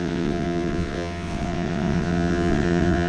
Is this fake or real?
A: fake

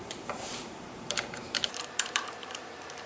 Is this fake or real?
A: fake